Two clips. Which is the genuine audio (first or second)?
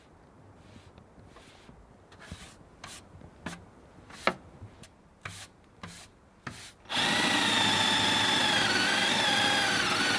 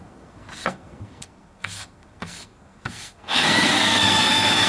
first